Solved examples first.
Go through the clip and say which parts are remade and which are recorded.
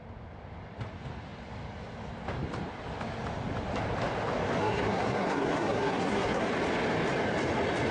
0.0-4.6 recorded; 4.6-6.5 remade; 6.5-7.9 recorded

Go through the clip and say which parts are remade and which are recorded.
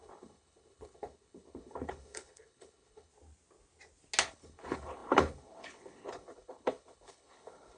0.0-3.1 remade; 3.1-4.2 recorded; 4.2-7.8 remade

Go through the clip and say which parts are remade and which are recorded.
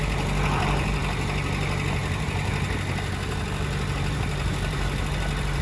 0.0-5.6 recorded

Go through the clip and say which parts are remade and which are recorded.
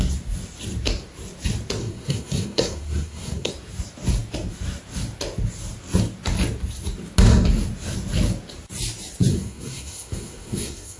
0.0-1.8 recorded; 1.8-3.5 remade; 3.5-9.3 recorded; 9.3-11.0 remade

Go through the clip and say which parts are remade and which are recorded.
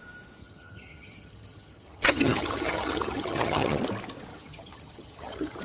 0.0-0.4 recorded; 0.4-3.8 remade; 3.8-4.3 recorded; 4.3-5.6 remade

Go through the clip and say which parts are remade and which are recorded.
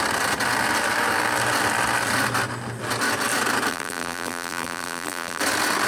0.0-3.7 recorded; 3.7-5.4 remade; 5.4-5.9 recorded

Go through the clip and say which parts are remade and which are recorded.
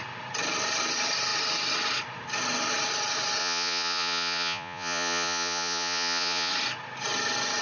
0.0-3.4 recorded; 3.4-6.5 remade; 6.5-7.6 recorded